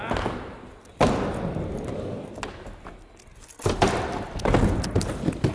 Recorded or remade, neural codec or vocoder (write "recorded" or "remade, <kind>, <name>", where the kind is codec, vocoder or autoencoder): recorded